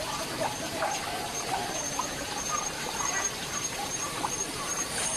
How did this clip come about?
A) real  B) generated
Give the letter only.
B